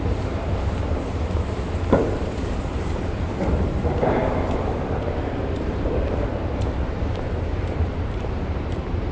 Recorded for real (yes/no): no